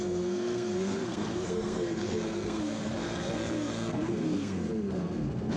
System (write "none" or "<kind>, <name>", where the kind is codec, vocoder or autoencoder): codec, SNAC